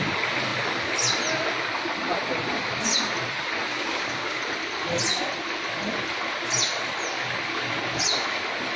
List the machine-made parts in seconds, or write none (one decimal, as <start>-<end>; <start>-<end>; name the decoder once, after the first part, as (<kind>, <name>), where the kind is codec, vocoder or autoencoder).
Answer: 3.7-4.4 (codec, DAC)